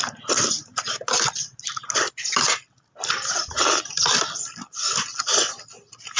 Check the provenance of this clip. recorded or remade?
recorded